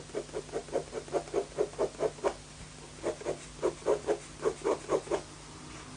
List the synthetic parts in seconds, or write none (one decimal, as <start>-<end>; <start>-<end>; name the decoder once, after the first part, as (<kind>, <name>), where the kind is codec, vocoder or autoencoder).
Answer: none